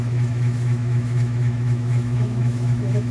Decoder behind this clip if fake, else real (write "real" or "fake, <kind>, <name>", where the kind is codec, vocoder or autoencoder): fake, autoencoder, DAC-VAE